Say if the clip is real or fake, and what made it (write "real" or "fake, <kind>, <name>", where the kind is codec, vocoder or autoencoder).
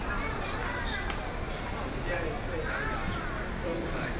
real